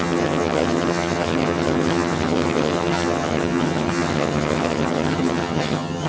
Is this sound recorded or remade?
remade